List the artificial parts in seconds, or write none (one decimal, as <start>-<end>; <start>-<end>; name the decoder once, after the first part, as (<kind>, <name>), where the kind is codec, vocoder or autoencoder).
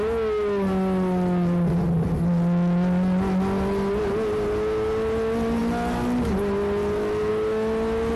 none